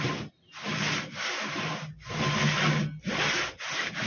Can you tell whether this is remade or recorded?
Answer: recorded